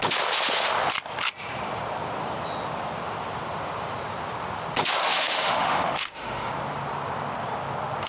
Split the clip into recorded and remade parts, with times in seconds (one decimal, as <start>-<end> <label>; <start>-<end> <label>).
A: 0.0-5.0 recorded; 5.0-6.5 remade; 6.5-8.1 recorded